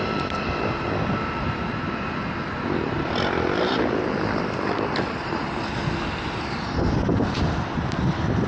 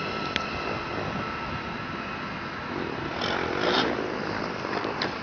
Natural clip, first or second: second